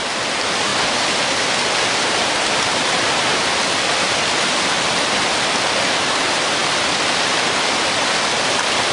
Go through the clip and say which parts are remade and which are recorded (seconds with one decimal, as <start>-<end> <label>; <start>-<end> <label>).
0.0-0.7 remade; 0.7-3.9 recorded; 3.9-8.9 remade

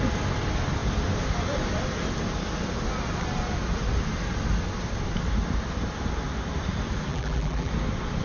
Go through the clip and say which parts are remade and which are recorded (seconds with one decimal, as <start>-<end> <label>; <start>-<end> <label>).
0.0-7.1 recorded; 7.1-7.7 remade; 7.7-8.2 recorded

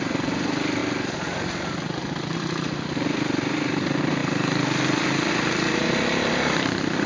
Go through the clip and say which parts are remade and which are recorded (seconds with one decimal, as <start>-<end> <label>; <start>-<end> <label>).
0.0-0.8 remade; 0.8-2.3 recorded; 2.3-4.2 remade; 4.2-5.9 recorded; 5.9-7.1 remade

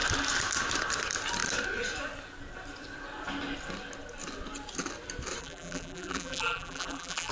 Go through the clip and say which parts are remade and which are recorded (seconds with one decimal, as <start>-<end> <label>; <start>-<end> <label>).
0.0-5.4 recorded; 5.4-7.3 remade

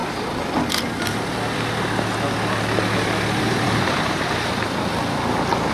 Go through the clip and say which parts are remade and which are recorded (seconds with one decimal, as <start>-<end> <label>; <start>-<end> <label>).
0.0-3.4 recorded; 3.4-4.9 remade; 4.9-5.7 recorded

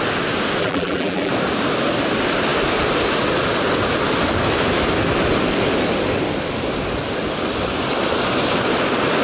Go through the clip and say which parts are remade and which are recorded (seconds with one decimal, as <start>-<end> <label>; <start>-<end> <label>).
0.0-0.6 recorded; 0.6-1.3 remade; 1.3-9.2 recorded

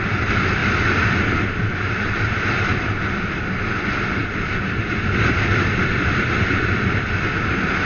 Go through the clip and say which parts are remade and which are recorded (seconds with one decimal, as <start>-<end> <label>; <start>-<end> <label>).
0.0-4.2 remade; 4.2-5.0 recorded; 5.0-7.8 remade

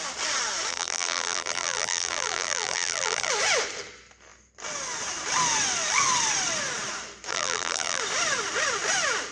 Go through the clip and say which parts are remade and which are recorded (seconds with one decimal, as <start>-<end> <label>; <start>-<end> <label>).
0.0-0.7 recorded; 0.7-3.3 remade; 3.3-7.3 recorded; 7.3-8.0 remade; 8.0-9.3 recorded